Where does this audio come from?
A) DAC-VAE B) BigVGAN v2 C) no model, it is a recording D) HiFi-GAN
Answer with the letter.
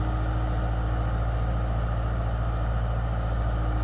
C